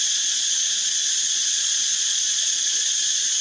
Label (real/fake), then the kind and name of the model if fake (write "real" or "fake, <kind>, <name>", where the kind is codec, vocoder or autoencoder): fake, vocoder, Vocos